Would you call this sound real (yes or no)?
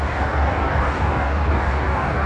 no